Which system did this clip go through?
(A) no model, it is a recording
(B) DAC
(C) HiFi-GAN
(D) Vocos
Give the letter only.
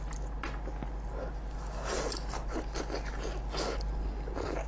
A